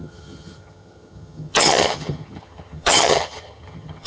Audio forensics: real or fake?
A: fake